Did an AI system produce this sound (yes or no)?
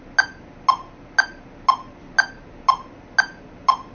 no